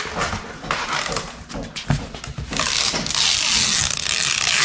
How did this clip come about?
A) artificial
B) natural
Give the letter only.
B